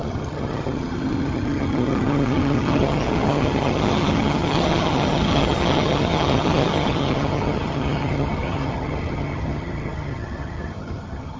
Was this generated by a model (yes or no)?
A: yes